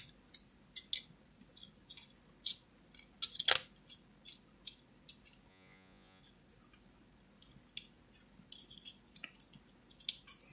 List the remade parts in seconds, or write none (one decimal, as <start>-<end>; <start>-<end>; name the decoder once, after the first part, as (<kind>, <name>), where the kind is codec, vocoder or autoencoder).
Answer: 5.5-6.2 (vocoder, Vocos)